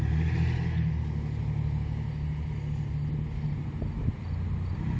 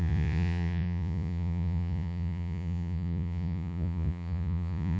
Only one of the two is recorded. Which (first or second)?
first